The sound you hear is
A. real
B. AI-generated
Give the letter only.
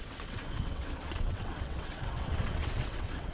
B